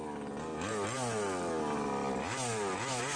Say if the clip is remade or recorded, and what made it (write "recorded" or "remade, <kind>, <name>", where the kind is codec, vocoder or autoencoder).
recorded